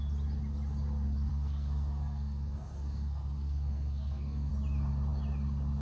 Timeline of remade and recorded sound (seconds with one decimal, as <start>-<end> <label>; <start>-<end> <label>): 0.0-1.3 recorded; 1.3-4.5 remade; 4.5-5.8 recorded